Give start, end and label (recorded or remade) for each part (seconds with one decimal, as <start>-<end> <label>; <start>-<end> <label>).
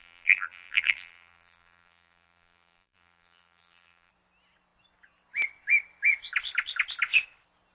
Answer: 0.0-4.1 remade; 4.1-7.7 recorded